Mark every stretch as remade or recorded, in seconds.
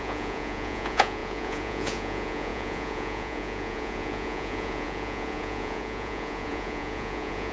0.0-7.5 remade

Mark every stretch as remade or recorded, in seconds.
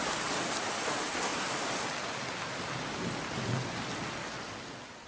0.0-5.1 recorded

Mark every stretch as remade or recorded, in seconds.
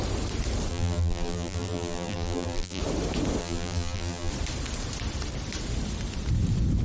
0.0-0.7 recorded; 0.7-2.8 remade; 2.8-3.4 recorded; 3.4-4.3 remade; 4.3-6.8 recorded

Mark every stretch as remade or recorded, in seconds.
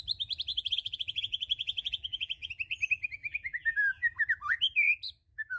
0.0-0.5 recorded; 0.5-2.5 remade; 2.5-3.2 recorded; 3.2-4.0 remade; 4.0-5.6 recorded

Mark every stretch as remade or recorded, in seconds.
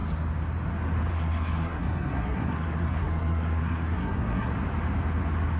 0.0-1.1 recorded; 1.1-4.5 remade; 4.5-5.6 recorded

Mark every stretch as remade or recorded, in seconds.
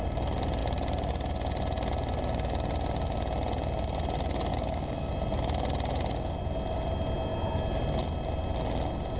0.0-4.5 recorded; 4.5-5.1 remade; 5.1-9.2 recorded